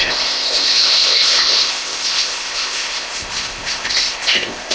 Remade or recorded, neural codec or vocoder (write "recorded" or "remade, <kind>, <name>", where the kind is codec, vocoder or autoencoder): remade, codec, ZipCodec